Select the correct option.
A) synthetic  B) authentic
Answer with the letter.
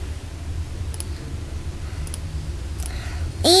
B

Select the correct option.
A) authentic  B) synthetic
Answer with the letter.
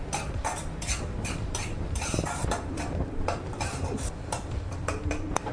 B